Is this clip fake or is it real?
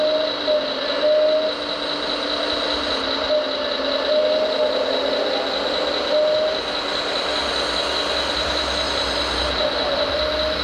real